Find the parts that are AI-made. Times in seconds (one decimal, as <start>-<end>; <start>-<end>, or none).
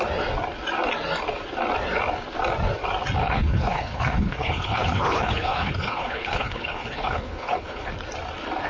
3.2-7.9